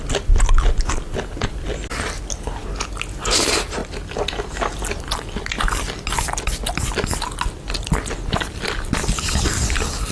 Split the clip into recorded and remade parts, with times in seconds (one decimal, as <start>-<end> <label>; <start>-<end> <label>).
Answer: 0.0-10.1 recorded